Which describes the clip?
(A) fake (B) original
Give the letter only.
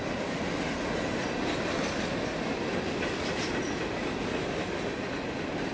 B